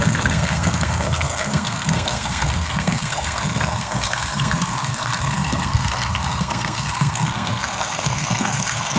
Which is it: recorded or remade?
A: remade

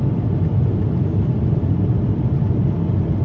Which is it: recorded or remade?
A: recorded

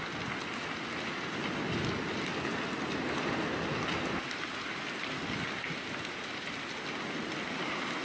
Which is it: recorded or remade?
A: recorded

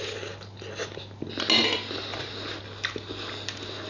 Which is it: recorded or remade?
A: recorded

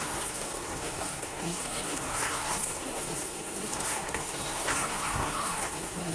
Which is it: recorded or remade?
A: remade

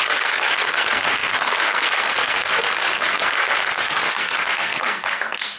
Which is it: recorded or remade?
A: remade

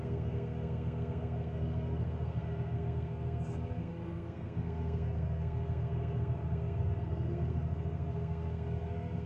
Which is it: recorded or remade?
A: remade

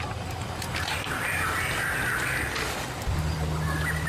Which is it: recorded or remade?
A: recorded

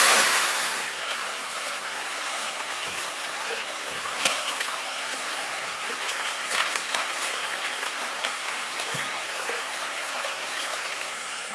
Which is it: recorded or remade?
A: remade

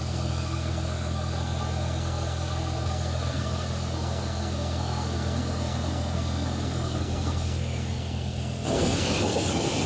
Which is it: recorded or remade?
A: remade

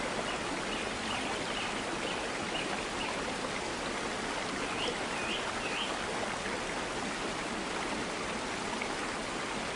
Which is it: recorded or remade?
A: recorded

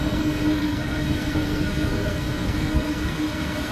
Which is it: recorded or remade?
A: remade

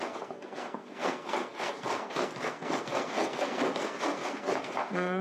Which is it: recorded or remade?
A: remade